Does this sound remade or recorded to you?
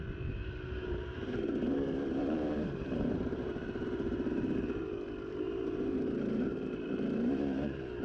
remade